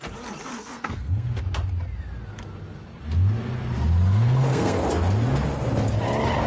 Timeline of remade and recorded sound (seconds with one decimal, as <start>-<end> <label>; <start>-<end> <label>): 0.0-0.5 recorded; 0.5-1.4 remade; 1.4-4.1 recorded; 4.1-4.8 remade; 4.8-6.5 recorded